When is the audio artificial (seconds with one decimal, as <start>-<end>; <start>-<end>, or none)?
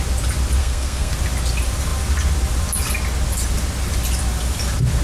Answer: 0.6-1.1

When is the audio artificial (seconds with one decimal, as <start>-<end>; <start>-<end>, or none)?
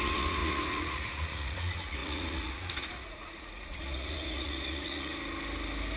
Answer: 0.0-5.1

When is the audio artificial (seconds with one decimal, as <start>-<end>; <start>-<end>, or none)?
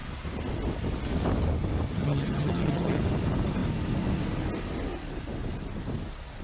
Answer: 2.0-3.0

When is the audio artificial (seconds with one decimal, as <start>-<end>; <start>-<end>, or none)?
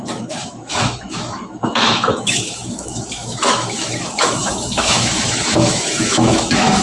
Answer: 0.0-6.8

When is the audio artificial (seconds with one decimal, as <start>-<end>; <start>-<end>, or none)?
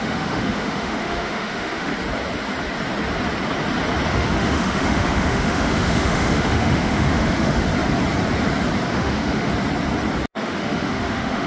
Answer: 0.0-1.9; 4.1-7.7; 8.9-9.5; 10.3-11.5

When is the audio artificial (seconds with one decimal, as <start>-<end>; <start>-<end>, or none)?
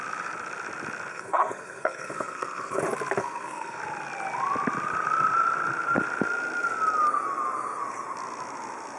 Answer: 1.1-2.8; 3.2-3.8